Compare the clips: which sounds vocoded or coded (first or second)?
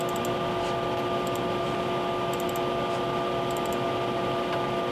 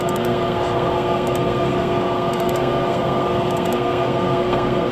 second